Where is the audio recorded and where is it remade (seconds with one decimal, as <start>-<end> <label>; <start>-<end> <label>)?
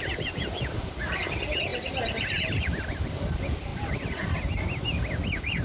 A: 0.0-0.8 remade; 0.8-3.7 recorded; 3.7-4.5 remade; 4.5-5.6 recorded